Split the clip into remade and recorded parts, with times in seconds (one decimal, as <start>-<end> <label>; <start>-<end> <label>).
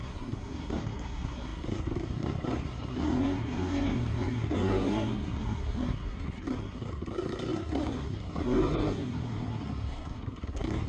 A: 0.0-10.9 remade